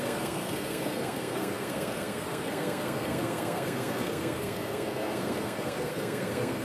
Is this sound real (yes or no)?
no